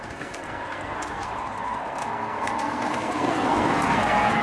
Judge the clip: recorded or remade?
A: remade